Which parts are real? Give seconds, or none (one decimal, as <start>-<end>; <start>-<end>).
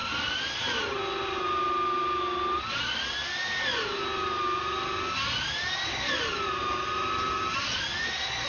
0.0-8.5